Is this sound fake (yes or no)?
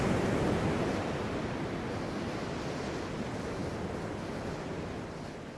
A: no